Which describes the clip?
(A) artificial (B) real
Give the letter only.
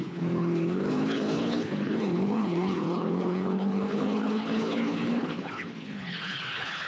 A